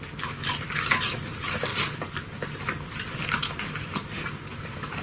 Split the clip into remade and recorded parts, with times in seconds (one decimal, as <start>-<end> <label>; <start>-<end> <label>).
0.0-1.7 remade; 1.7-2.5 recorded; 2.5-5.0 remade